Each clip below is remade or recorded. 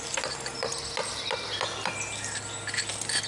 recorded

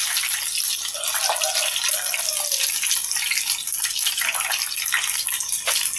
recorded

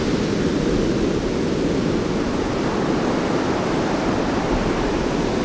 recorded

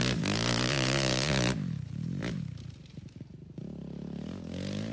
recorded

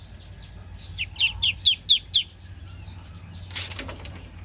recorded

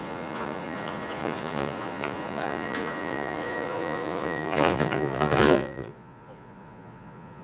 remade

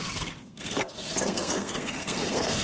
remade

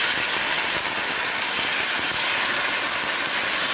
recorded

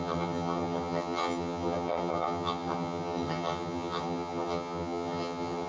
remade